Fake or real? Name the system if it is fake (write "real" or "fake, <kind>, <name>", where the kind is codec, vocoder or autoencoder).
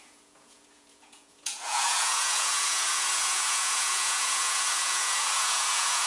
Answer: fake, vocoder, Vocos